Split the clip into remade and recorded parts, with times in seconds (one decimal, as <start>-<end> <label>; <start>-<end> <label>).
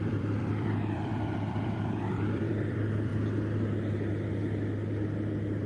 0.0-3.1 remade; 3.1-5.7 recorded